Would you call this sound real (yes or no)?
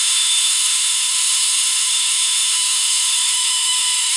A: no